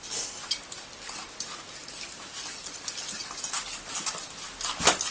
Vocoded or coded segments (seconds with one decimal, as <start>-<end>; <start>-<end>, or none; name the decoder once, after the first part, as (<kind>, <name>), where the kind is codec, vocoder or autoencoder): 3.2-4.4 (vocoder, BigVGAN v2)